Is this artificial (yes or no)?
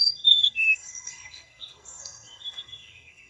yes